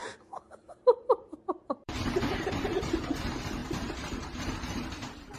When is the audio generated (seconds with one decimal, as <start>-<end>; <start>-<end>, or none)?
0.0-3.0; 3.6-5.4